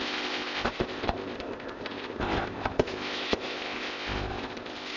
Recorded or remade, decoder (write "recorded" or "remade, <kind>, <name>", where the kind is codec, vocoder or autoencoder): remade, codec, ZipCodec